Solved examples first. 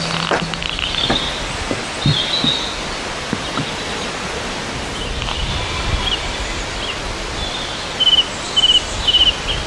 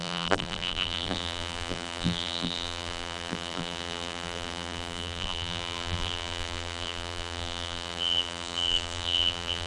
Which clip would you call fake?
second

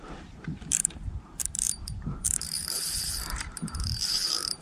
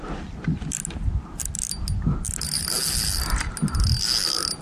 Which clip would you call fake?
first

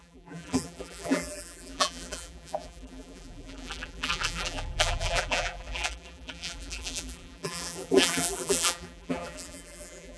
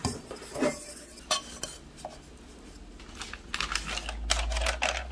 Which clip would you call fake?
first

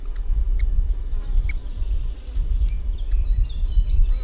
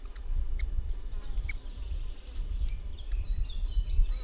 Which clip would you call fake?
second